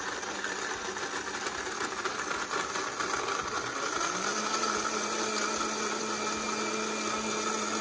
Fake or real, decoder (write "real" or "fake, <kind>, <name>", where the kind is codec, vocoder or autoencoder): real